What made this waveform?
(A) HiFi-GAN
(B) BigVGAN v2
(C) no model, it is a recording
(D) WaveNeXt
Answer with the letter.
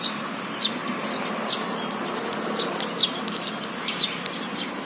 C